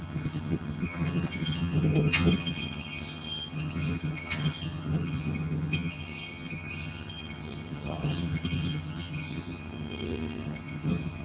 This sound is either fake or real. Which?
fake